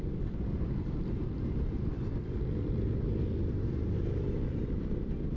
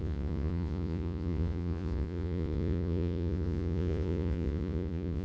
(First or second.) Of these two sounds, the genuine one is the first